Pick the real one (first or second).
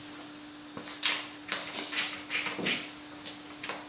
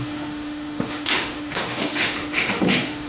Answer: first